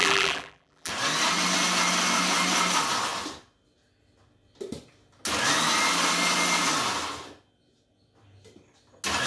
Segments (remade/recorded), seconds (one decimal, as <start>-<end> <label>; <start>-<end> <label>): 0.0-0.9 remade; 0.9-9.3 recorded